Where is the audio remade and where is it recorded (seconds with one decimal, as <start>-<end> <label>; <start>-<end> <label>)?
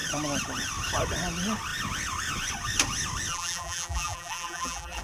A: 0.0-3.3 recorded; 3.3-5.0 remade